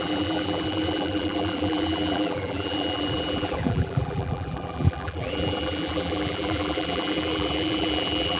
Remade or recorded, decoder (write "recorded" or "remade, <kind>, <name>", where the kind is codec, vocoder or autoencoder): remade, vocoder, BigVGAN v2